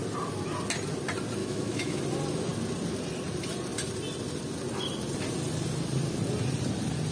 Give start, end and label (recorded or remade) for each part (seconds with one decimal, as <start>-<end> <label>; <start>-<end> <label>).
0.0-1.4 recorded; 1.4-2.0 remade; 2.0-7.1 recorded